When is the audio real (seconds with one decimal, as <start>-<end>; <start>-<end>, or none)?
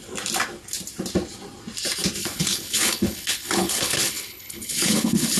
0.0-2.2